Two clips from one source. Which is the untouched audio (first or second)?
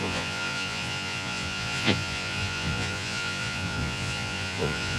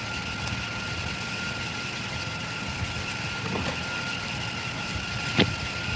second